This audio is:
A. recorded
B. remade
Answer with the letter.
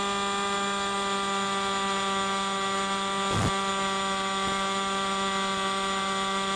A